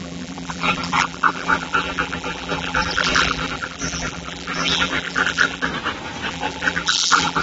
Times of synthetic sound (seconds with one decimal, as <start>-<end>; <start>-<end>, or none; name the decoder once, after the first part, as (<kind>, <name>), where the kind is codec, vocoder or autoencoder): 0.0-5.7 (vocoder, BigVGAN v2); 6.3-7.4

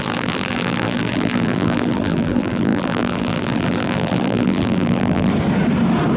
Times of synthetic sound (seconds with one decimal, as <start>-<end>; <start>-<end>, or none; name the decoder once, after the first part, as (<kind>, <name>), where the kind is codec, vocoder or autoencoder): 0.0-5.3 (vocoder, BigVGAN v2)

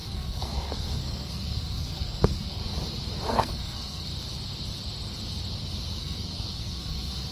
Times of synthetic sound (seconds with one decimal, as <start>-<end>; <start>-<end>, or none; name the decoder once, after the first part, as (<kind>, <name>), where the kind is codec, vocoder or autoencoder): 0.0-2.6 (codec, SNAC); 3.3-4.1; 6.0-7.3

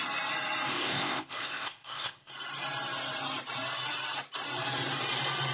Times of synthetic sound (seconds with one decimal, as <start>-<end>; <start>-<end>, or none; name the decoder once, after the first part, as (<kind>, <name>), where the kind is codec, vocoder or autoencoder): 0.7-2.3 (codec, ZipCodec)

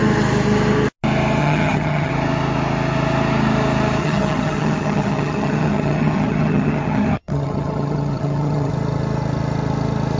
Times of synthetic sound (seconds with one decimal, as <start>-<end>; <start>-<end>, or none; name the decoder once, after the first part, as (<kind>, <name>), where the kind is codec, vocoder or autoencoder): 1.4-2.1 (vocoder, HiFi-GAN); 4.0-8.7